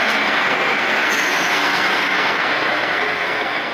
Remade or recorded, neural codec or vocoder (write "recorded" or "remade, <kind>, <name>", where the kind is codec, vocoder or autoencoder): remade, codec, SNAC